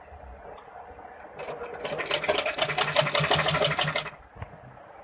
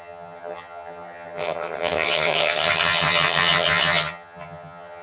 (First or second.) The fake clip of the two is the second